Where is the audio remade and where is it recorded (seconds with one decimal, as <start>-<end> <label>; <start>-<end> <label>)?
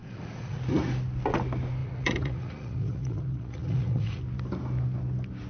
0.0-0.6 remade; 0.6-1.8 recorded; 1.8-4.2 remade; 4.2-5.5 recorded